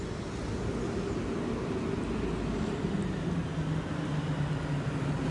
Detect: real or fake real